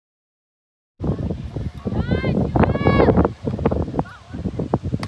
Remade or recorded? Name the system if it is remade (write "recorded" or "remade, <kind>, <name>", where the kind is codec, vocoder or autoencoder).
recorded